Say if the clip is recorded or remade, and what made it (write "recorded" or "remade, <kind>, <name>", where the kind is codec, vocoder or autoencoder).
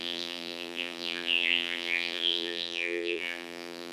remade, vocoder, BigVGAN v2